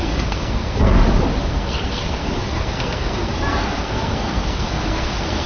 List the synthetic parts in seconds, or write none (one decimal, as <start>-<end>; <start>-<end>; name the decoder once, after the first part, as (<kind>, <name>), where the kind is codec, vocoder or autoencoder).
0.0-0.9 (codec, SNAC); 1.4-5.5